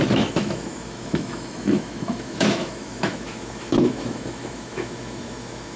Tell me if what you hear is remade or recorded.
remade